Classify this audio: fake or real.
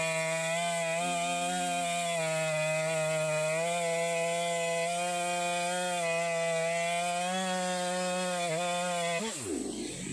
real